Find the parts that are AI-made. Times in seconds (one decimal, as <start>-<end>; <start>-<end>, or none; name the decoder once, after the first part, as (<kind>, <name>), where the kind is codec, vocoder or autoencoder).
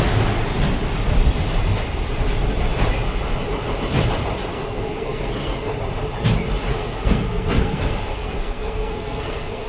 4.5-5.7 (codec, SNAC); 6.7-9.7